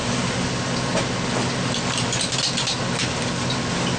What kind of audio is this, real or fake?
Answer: real